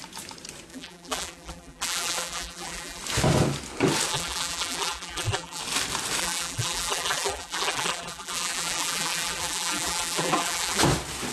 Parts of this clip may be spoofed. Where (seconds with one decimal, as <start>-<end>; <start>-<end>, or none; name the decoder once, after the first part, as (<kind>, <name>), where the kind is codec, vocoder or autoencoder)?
0.7-3.0 (vocoder, BigVGAN v2); 4.1-5.6; 6.2-10.8